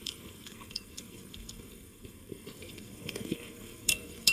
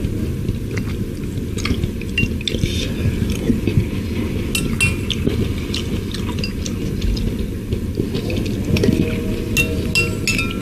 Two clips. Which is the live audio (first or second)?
second